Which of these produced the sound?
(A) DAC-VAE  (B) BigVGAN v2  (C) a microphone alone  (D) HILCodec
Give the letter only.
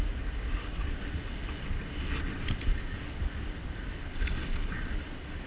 C